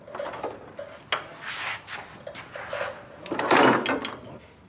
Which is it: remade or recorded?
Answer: recorded